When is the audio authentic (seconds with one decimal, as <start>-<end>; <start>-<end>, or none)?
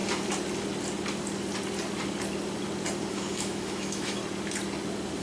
0.0-3.1; 4.2-5.2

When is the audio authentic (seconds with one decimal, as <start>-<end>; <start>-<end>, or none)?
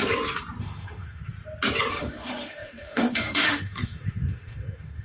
0.0-0.6; 1.2-1.9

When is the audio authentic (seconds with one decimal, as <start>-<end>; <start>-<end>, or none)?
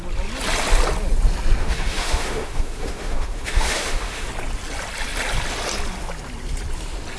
0.0-1.6; 4.3-7.2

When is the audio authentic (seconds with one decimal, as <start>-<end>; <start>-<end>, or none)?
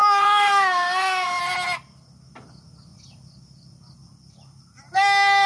1.4-5.5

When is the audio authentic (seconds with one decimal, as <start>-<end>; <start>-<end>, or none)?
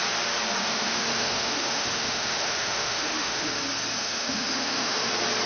0.0-0.6; 3.5-4.0; 5.1-5.5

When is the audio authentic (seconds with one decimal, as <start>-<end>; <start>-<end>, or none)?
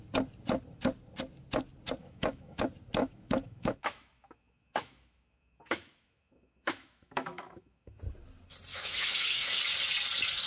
0.0-2.0; 2.6-3.0; 8.0-8.7; 9.6-10.5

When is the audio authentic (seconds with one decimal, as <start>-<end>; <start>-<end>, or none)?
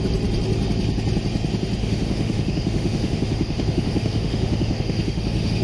0.0-1.8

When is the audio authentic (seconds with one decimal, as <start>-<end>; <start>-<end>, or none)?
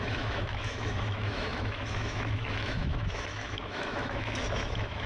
none